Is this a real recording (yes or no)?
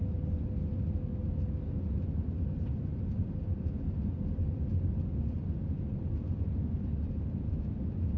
yes